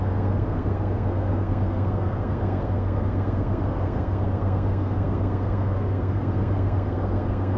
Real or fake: fake